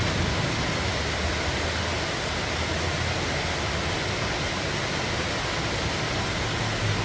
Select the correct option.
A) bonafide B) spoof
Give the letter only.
A